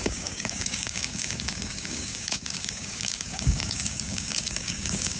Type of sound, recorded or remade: remade